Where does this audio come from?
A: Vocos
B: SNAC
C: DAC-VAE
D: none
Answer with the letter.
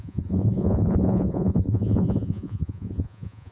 A